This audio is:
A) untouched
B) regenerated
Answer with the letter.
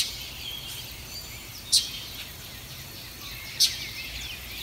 B